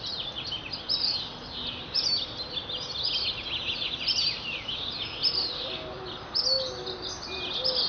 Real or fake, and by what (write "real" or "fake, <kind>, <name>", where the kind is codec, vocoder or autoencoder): real